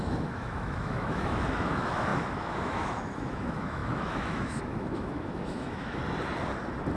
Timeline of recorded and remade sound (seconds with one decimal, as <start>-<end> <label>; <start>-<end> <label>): 0.0-6.0 remade; 6.0-7.0 recorded